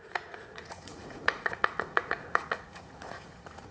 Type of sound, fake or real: fake